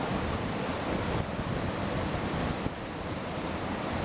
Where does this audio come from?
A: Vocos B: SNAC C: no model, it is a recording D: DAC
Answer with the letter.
C